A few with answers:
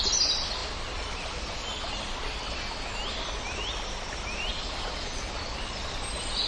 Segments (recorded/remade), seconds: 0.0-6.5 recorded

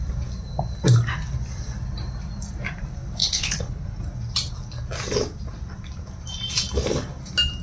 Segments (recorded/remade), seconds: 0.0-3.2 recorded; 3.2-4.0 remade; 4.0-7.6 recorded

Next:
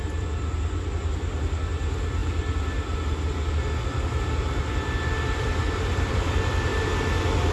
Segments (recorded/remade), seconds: 0.0-7.5 recorded